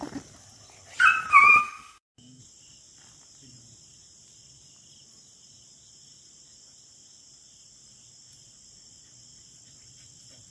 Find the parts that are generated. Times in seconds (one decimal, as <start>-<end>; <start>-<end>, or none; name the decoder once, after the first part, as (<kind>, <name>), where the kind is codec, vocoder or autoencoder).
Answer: 1.6-2.4 (autoencoder, DAC-VAE)